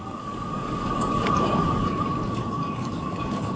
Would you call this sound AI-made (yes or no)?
yes